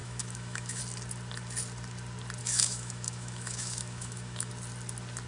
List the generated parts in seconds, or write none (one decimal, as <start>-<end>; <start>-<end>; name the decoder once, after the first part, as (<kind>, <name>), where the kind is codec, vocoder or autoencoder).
0.0-0.8 (autoencoder, DAC-VAE); 2.4-4.5